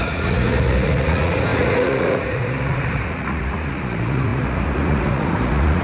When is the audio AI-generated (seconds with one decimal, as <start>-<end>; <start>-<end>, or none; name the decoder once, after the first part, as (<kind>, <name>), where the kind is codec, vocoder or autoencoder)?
0.0-5.8 (vocoder, Vocos)